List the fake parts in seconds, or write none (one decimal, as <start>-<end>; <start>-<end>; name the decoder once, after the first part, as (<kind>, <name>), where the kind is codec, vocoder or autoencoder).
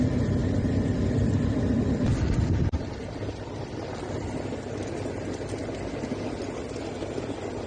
0.4-3.9 (vocoder, BigVGAN v2)